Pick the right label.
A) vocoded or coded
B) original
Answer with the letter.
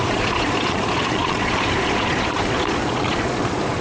A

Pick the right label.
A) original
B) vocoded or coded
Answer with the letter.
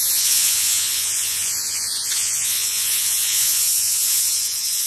B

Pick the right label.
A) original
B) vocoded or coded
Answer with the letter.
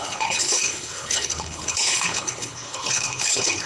B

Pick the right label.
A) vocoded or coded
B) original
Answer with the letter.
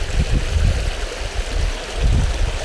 B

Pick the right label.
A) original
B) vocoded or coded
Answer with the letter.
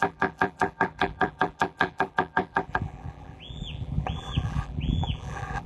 B